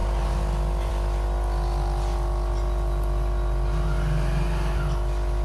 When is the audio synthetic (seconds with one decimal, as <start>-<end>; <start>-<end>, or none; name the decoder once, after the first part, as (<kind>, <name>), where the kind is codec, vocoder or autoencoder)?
none